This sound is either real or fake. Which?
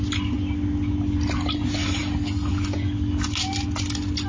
real